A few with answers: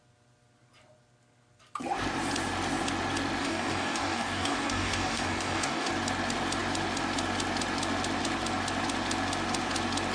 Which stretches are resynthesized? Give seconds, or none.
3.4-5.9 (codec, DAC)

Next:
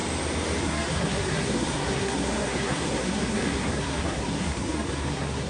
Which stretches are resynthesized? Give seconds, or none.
0.6-5.5 (codec, SNAC)

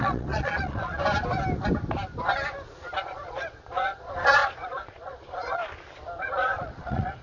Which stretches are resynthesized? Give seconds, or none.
0.0-1.0 (vocoder, Vocos); 3.0-5.6; 6.2-7.2

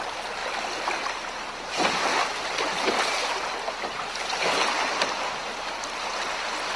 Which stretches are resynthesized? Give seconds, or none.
none

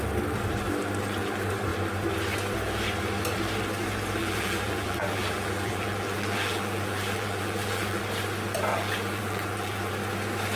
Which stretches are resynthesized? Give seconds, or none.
4.2-8.0 (vocoder, BigVGAN v2); 8.7-9.9